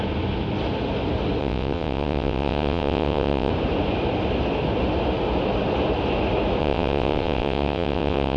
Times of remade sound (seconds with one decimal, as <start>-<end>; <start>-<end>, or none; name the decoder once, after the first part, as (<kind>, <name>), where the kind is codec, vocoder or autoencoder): 1.4-3.5 (vocoder, WaveNeXt); 6.6-8.4

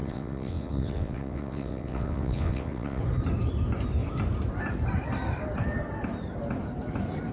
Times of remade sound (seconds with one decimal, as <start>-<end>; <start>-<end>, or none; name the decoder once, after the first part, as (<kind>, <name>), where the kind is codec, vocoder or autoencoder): 0.0-3.0 (vocoder, WaveNeXt)

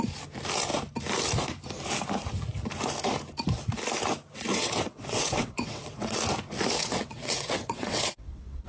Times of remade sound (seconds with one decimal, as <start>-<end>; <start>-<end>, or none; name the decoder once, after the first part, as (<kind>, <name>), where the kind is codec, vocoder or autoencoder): 4.5-6.2 (vocoder, WaveNeXt); 6.8-8.7

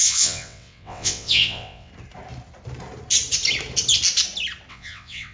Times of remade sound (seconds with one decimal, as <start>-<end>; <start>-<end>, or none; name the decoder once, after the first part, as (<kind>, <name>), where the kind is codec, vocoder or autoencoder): 0.0-1.9 (vocoder, WaveNeXt); 4.7-5.3

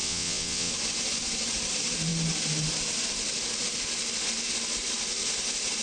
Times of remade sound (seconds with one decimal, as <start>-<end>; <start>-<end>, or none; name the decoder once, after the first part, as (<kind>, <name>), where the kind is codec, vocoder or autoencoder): 0.0-0.7 (vocoder, WaveNeXt)

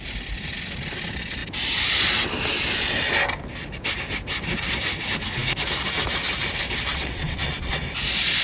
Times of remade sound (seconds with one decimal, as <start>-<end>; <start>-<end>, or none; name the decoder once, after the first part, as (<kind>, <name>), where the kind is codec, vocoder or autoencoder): 6.9-7.7 (vocoder, WaveNeXt)